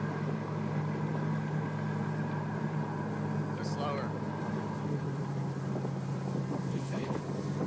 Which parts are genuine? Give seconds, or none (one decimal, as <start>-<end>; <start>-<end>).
0.0-6.7; 7.2-7.7